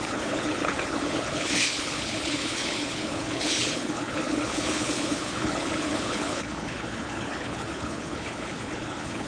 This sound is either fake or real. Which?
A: fake